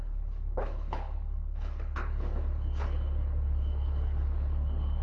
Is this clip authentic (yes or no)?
no